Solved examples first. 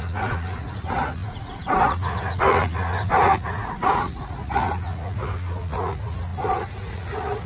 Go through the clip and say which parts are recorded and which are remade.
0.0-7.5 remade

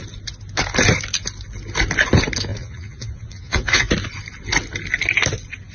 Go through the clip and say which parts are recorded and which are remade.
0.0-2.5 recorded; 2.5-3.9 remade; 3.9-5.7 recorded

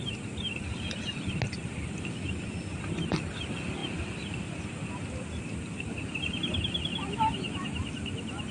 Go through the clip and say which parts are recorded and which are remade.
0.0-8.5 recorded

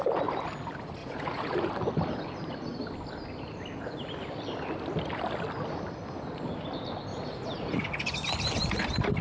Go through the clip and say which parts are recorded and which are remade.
0.0-1.0 recorded; 1.0-1.7 remade; 1.7-7.1 recorded; 7.1-8.0 remade; 8.0-9.2 recorded